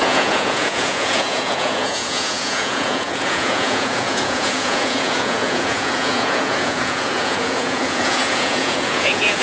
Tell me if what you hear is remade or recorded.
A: remade